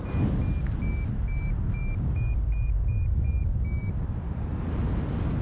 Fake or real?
real